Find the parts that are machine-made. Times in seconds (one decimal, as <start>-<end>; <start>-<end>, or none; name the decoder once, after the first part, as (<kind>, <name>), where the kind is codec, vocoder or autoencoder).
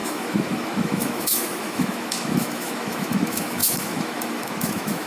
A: 0.0-5.1 (autoencoder, DAC-VAE)